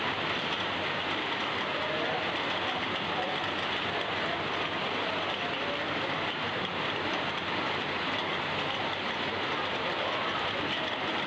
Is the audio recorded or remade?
recorded